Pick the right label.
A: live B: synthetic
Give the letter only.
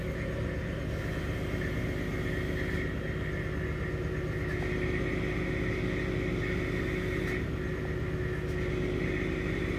A